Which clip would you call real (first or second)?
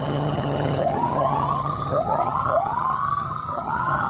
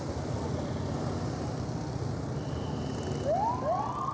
second